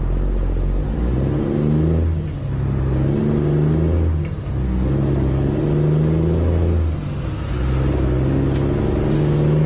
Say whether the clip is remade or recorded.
recorded